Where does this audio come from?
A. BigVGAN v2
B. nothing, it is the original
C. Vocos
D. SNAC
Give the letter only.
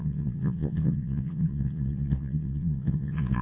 C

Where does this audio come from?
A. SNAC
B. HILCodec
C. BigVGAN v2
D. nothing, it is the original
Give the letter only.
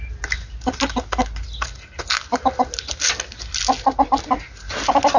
D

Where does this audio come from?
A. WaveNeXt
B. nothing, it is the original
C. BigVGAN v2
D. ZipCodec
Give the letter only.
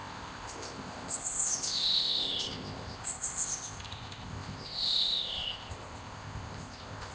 D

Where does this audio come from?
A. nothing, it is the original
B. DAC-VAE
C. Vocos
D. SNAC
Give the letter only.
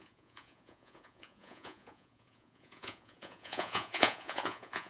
C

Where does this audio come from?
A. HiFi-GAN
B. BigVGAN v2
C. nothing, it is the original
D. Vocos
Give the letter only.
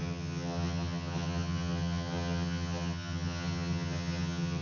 A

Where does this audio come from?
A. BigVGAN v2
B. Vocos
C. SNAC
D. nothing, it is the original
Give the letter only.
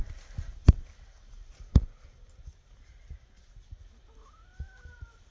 D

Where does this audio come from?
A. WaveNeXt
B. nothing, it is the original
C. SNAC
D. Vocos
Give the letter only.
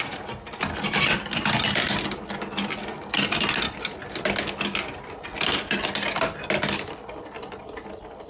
B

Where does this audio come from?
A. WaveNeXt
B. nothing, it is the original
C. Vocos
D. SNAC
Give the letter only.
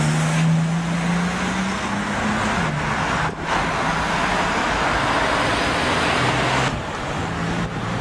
B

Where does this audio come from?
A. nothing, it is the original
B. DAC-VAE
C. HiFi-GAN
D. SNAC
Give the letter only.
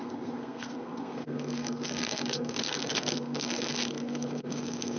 D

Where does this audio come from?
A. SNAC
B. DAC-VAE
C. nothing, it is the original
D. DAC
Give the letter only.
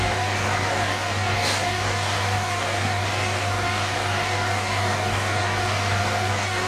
D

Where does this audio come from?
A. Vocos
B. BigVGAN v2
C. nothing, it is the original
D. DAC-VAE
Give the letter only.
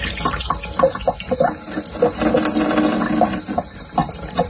C